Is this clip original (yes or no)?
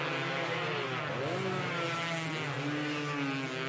yes